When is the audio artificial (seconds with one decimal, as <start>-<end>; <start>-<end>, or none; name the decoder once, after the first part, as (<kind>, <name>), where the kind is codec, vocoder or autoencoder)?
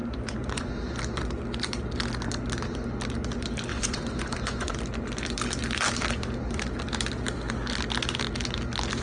0.0-0.7 (vocoder, Vocos); 3.7-4.8